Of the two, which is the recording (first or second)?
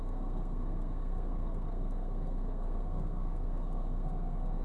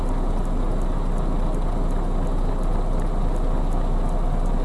second